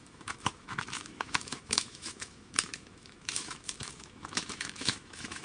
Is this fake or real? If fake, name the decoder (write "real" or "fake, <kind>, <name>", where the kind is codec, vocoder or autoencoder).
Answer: fake, autoencoder, DAC-VAE